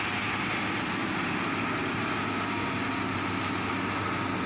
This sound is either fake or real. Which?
real